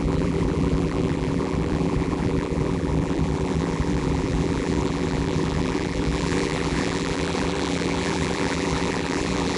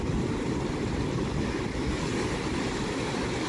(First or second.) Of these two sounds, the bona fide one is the second